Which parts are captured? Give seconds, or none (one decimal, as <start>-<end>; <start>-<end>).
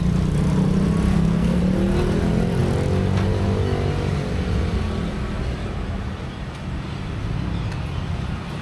0.0-1.1; 1.6-8.6